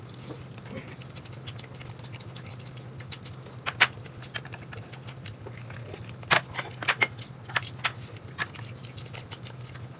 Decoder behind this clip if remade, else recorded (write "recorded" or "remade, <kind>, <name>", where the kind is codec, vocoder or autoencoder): recorded